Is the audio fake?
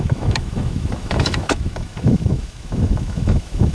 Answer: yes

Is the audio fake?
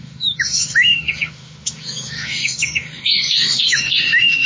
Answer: yes